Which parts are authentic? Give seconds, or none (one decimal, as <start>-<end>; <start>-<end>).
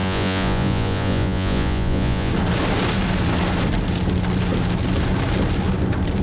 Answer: 2.3-6.2